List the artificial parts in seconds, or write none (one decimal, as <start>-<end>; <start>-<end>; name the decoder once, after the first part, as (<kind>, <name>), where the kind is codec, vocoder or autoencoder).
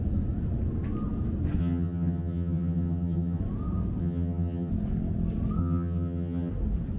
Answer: 1.6-3.4 (vocoder, HiFi-GAN); 4.0-4.7; 5.6-6.5